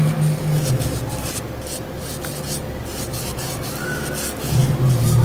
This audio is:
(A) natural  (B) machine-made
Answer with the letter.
B